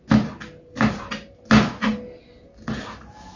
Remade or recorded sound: recorded